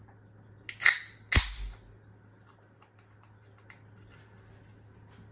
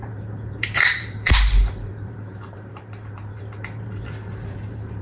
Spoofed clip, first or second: second